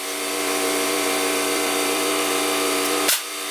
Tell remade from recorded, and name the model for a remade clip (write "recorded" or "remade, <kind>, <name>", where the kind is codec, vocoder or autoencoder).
remade, vocoder, BigVGAN v2